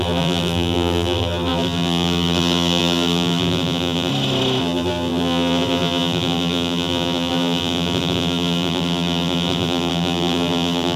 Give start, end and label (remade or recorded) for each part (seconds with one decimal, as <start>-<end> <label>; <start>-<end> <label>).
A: 0.0-4.1 remade; 4.1-4.6 recorded; 4.6-11.0 remade